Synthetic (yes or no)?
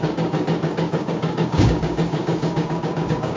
yes